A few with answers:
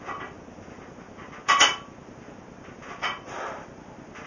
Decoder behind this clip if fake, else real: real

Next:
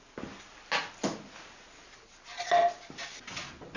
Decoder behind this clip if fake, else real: real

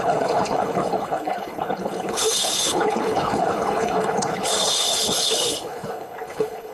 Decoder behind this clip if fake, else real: fake, codec, HILCodec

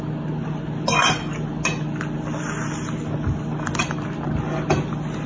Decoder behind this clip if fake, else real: real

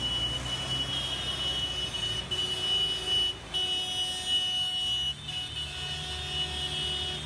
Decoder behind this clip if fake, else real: real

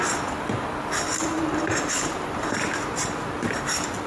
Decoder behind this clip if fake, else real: real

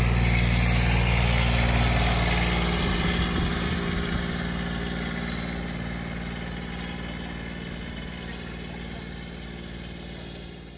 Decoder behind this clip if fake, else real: real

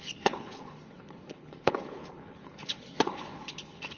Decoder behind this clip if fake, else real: fake, codec, HILCodec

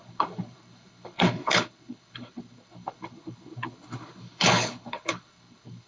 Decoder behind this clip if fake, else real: fake, codec, HILCodec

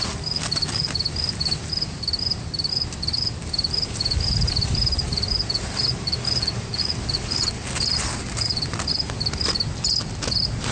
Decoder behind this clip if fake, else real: real